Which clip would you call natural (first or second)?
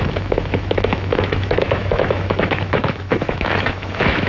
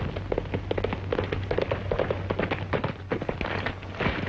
second